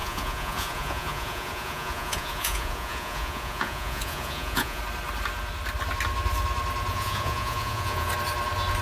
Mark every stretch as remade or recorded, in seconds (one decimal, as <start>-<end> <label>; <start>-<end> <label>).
0.0-4.8 remade; 4.8-6.9 recorded; 6.9-8.1 remade; 8.1-8.8 recorded